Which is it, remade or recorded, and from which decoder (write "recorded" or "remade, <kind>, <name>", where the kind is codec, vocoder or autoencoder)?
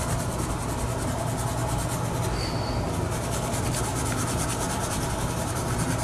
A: recorded